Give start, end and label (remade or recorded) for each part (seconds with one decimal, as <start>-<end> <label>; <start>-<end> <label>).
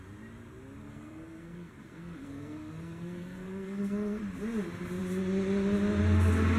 0.0-0.8 recorded; 0.8-4.2 remade; 4.2-6.6 recorded